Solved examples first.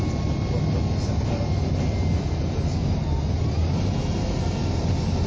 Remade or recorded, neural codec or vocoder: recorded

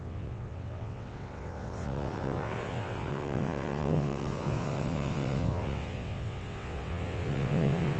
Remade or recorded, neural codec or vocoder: remade, vocoder, WaveNeXt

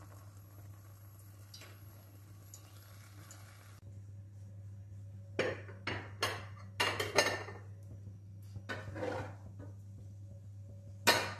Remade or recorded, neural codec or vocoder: recorded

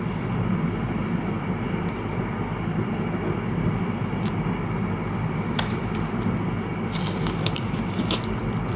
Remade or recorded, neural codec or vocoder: recorded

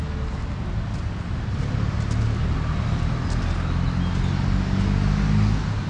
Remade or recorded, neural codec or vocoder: recorded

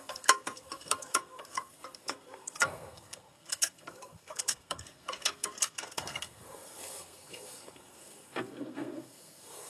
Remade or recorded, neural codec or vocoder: remade, codec, SNAC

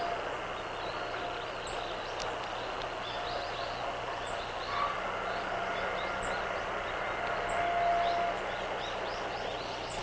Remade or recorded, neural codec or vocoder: recorded